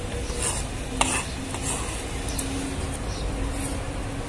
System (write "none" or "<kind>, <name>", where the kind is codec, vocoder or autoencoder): none